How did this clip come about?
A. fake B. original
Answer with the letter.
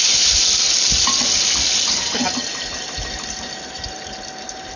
B